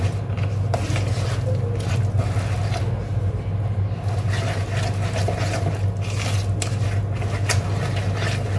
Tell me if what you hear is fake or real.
real